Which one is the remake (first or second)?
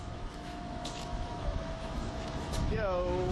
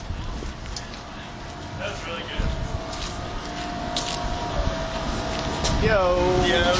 first